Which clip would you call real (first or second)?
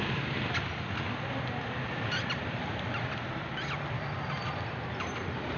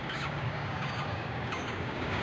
first